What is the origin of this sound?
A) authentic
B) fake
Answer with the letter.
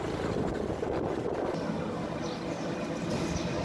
A